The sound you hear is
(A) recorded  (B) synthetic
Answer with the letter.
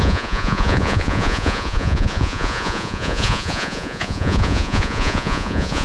B